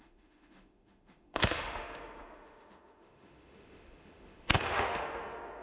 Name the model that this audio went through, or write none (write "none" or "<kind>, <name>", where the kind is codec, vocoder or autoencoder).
autoencoder, DAC-VAE